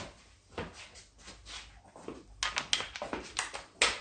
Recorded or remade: recorded